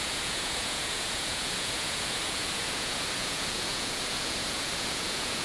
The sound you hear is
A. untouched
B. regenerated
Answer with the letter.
B